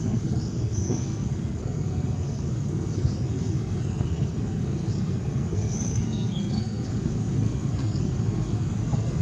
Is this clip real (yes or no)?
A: no